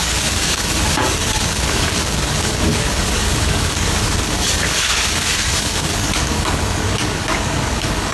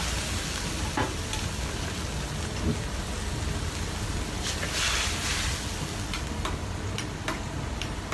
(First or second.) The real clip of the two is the second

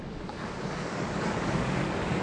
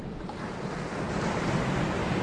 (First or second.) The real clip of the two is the second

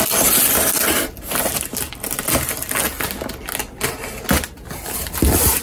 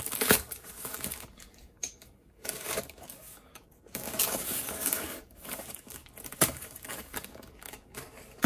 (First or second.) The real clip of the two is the first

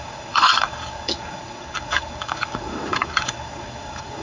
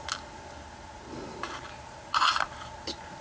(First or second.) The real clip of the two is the second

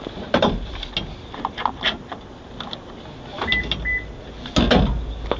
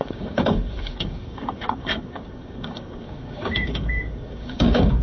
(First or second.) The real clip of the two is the first